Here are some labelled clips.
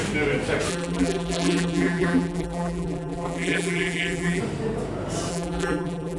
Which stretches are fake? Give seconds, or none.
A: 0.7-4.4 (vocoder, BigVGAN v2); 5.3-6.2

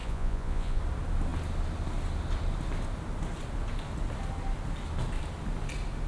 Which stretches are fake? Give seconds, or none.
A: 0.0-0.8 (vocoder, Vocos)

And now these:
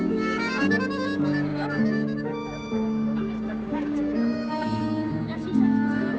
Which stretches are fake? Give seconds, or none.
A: 0.0-6.2 (codec, DAC)

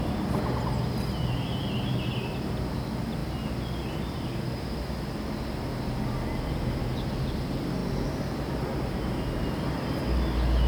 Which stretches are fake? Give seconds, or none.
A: none

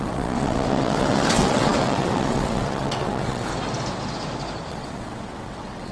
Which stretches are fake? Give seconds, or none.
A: 0.0-3.5 (vocoder, WaveNeXt); 4.7-5.9

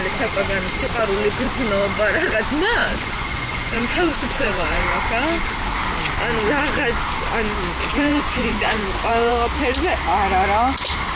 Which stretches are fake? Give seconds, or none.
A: 2.8-5.1 (vocoder, Vocos); 7.9-9.3